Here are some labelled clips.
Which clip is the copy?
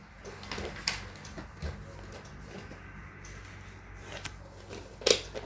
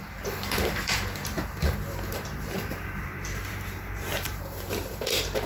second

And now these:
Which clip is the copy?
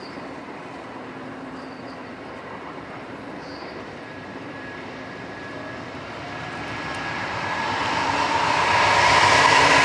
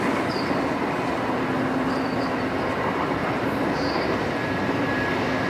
first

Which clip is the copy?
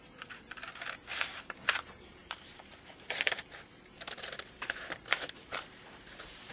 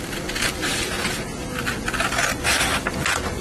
first